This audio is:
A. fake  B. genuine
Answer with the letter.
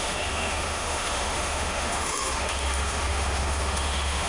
A